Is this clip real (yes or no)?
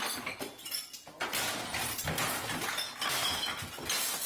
yes